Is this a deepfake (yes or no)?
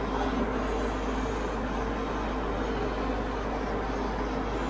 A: no